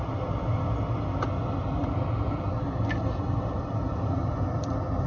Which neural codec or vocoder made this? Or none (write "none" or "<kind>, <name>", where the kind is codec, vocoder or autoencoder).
none